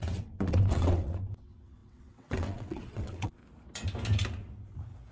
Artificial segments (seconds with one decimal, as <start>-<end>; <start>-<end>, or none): 0.0-3.4